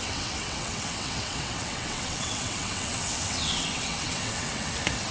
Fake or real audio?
fake